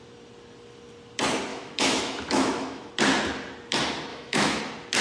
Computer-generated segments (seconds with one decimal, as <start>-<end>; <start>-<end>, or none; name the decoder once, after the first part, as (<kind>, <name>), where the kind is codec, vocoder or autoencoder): 1.5-2.9 (autoencoder, DAC-VAE); 4.1-4.6